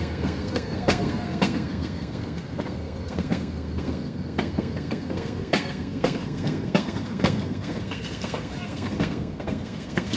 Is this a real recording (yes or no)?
no